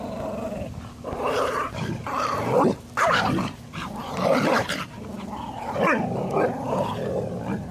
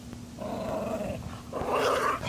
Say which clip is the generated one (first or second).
first